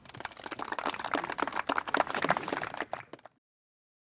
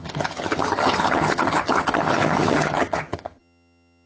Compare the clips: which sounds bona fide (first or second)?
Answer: first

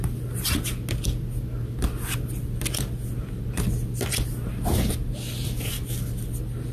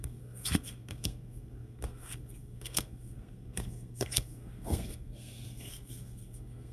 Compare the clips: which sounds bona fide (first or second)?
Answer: first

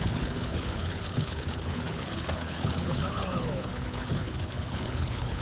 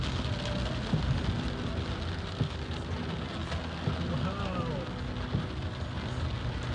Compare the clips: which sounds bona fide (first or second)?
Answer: second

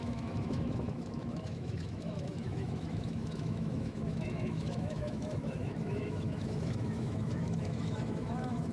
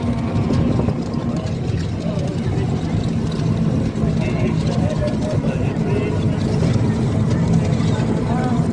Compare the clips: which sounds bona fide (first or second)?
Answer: second